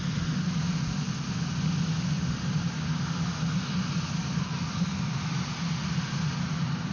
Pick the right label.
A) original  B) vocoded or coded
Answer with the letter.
A